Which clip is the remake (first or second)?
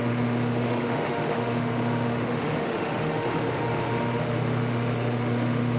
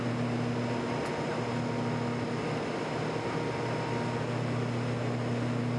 first